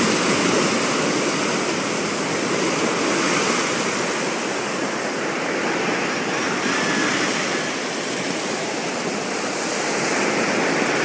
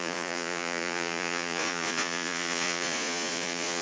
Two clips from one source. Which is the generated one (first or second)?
second